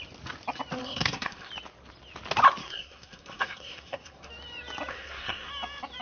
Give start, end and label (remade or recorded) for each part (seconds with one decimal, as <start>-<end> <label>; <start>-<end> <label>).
0.0-0.8 recorded; 0.8-1.5 remade; 1.5-2.6 recorded; 2.6-4.3 remade; 4.3-4.9 recorded; 4.9-5.5 remade; 5.5-6.0 recorded